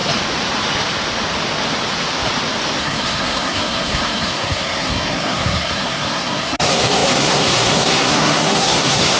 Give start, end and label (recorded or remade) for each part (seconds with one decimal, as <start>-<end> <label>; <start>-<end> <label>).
0.0-2.8 recorded; 2.8-9.2 remade